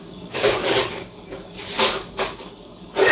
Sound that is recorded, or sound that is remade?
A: remade